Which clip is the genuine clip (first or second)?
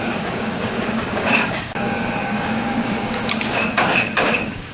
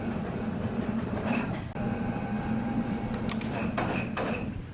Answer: second